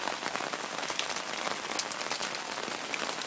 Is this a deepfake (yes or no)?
no